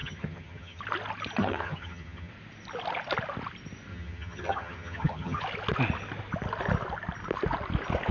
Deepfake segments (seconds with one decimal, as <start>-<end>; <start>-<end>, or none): 0.0-0.8; 1.4-2.3; 3.9-5.4